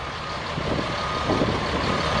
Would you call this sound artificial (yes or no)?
no